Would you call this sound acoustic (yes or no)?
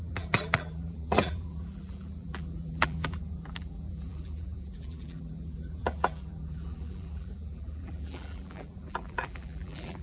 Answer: no